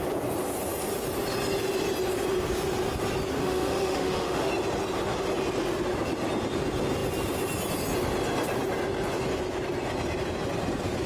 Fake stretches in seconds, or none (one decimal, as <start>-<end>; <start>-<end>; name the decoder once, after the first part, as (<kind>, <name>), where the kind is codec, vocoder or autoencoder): 3.4-4.5 (autoencoder, DAC-VAE)